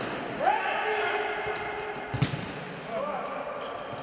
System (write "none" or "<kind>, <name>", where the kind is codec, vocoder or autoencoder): none